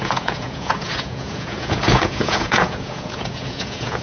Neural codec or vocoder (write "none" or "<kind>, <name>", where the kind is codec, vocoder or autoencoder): vocoder, Vocos